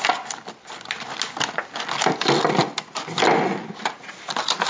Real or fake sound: real